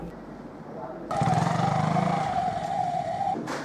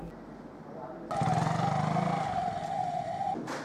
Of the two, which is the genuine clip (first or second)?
second